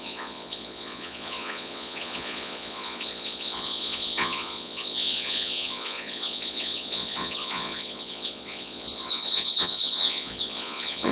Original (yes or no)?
no